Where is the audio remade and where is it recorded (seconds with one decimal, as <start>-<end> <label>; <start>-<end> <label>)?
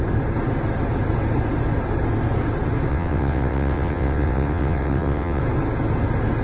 0.0-2.9 recorded; 2.9-5.4 remade; 5.4-6.4 recorded